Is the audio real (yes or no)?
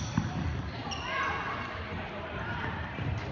yes